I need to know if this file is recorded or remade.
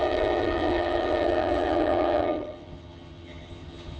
remade